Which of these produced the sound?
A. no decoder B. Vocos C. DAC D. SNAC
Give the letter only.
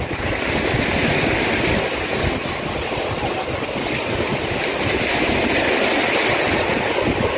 A